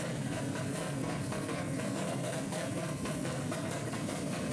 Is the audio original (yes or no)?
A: no